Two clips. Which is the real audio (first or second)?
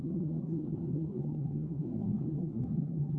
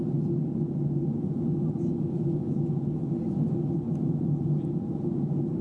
second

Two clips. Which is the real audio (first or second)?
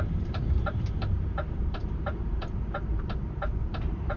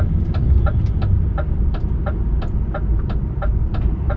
second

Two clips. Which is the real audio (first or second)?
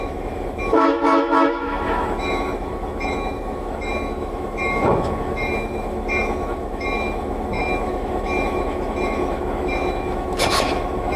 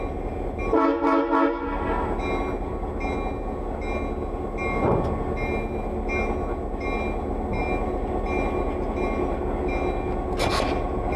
second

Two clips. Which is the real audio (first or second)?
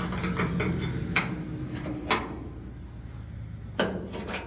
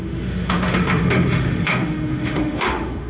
first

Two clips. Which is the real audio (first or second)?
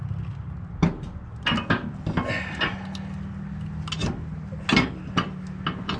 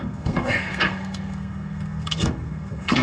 first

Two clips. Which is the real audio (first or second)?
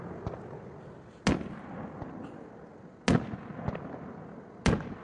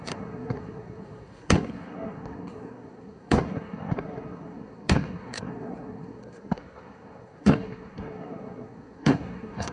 first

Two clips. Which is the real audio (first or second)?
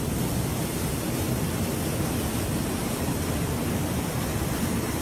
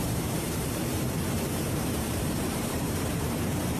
first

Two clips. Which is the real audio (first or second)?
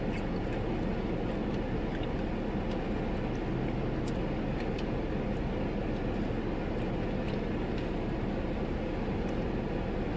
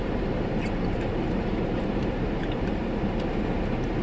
first